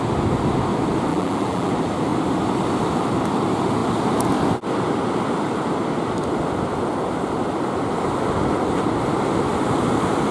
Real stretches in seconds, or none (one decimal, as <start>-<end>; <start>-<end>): 0.0-1.1; 1.7-10.3